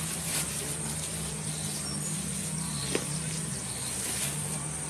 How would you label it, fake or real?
real